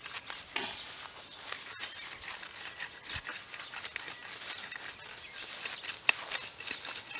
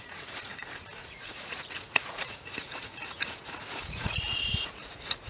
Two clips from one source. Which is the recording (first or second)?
first